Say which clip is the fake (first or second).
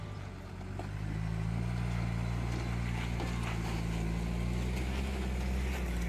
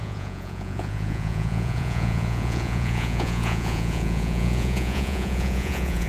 second